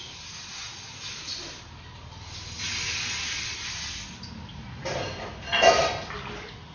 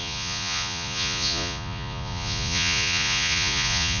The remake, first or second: second